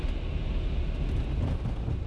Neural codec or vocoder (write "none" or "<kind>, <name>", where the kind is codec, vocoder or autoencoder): none